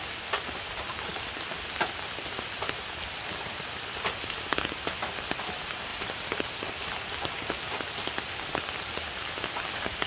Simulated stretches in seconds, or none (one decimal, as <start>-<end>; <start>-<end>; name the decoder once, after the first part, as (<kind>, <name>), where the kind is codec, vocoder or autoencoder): none